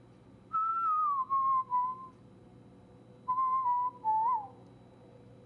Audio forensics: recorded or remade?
recorded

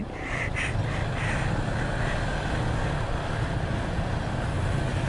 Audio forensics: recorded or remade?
recorded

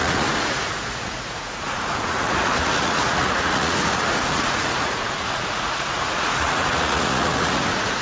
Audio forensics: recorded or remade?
remade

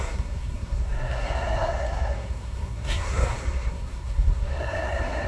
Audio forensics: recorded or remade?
remade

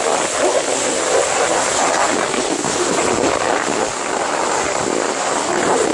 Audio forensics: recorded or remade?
recorded